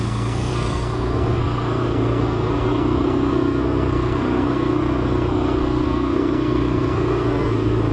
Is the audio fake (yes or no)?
yes